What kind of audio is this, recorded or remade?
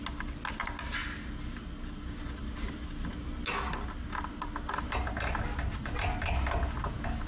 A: recorded